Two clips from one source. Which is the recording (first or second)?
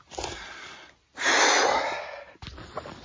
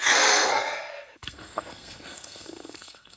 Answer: first